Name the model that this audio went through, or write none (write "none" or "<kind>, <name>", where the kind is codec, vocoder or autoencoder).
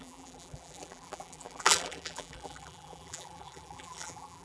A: vocoder, BigVGAN v2